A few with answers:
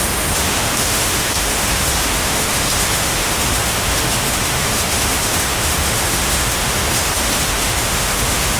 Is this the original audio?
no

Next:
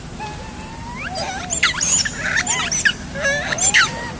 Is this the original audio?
yes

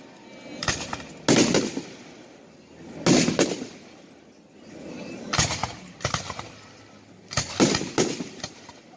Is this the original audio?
yes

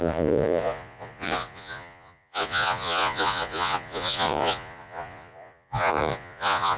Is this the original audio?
no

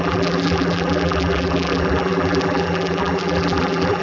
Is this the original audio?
no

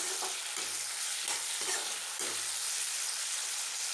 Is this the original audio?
yes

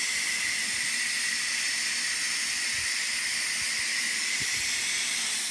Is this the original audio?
yes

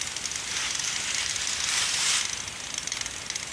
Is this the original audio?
yes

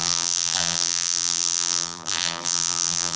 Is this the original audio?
no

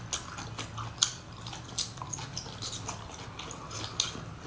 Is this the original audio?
yes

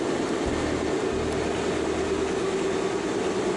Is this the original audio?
yes